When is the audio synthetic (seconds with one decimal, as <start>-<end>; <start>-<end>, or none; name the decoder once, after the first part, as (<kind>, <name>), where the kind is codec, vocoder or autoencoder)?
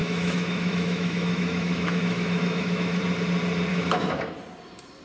0.0-3.0 (autoencoder, DAC-VAE); 3.7-4.2